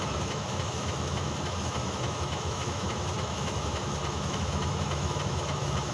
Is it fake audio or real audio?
fake